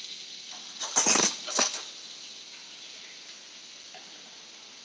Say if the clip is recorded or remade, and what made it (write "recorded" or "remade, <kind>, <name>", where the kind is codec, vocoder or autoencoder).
recorded